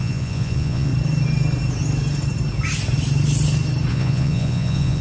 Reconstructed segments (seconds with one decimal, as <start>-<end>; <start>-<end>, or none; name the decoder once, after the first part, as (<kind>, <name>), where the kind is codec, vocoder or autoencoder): 0.0-0.9 (vocoder, Vocos); 3.9-5.0